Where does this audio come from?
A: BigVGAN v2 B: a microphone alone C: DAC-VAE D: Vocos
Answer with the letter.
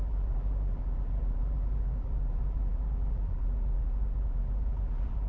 A